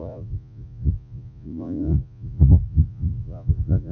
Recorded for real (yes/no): no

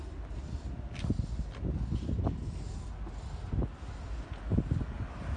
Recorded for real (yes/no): yes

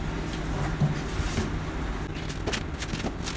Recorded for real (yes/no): yes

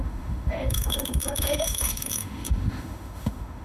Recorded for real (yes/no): no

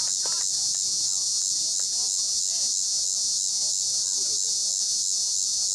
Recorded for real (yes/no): yes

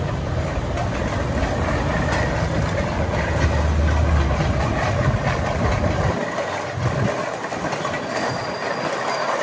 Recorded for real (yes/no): yes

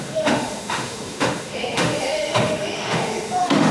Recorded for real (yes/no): no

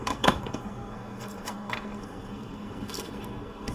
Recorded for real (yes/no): no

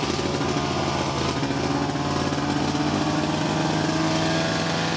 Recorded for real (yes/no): yes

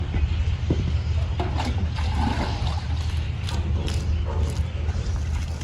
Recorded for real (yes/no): yes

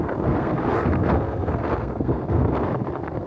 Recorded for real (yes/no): no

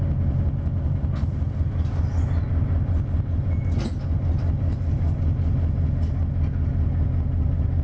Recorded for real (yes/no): yes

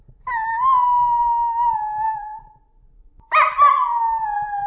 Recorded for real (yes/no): yes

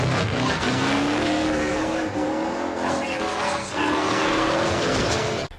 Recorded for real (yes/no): no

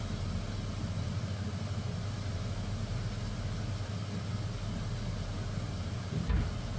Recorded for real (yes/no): yes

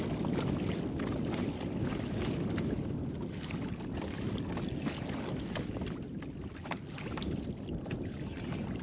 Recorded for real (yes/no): yes